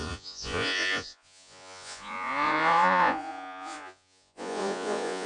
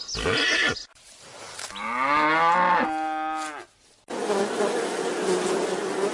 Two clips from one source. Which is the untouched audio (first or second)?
second